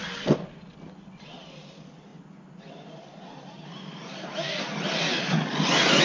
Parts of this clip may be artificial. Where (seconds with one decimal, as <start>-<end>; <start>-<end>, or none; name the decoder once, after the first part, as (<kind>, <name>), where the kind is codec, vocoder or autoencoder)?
none